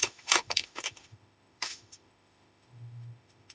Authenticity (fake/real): fake